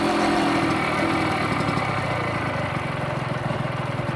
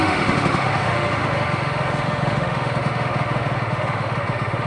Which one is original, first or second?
first